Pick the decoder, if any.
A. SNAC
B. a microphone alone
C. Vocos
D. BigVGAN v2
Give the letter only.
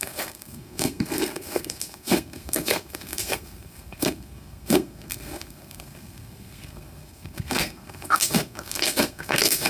A